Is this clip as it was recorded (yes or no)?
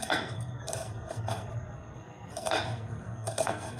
no